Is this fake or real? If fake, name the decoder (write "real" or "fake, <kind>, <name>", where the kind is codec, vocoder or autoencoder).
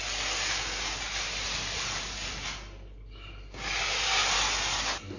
real